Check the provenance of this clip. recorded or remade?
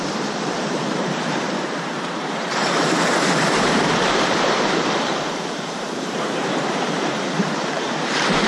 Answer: remade